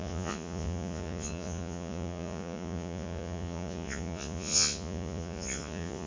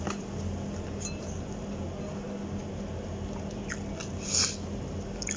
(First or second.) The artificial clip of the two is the first